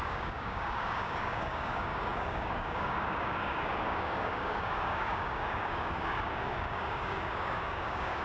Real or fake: fake